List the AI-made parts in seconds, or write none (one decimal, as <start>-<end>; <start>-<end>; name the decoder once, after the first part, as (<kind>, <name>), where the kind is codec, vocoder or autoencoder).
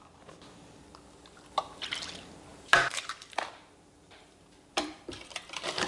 1.3-1.9 (vocoder, BigVGAN v2); 2.5-5.4